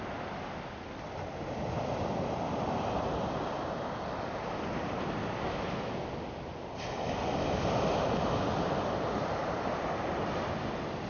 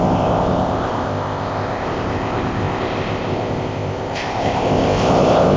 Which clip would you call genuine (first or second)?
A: first